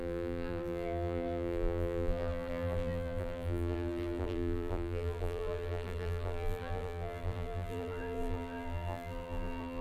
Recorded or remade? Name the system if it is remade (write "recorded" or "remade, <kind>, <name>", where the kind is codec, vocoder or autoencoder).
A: remade, vocoder, BigVGAN v2